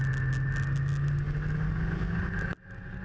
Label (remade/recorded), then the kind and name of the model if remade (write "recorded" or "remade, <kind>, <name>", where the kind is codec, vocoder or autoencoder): recorded